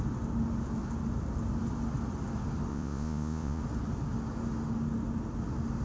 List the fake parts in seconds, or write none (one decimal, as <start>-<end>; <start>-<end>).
2.7-3.6